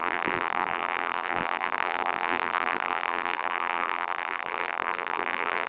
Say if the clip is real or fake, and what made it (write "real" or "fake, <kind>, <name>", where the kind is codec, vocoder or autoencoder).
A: fake, vocoder, BigVGAN v2